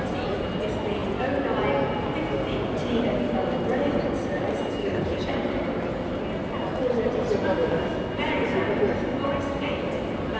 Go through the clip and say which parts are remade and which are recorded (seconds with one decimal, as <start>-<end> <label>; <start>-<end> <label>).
0.0-4.8 recorded; 4.8-5.3 remade; 5.3-10.4 recorded